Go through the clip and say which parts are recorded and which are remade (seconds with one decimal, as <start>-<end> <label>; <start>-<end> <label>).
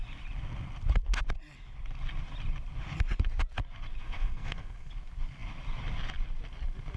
0.0-4.0 recorded; 4.0-4.9 remade; 4.9-7.0 recorded